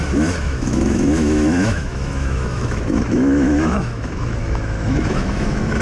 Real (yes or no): no